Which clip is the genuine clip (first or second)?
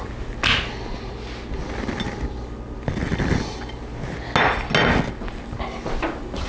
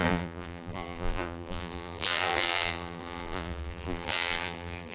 first